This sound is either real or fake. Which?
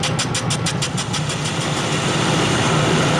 real